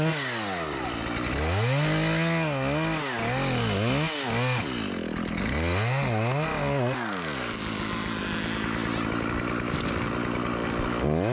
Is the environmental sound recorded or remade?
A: recorded